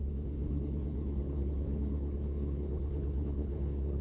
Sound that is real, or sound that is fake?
fake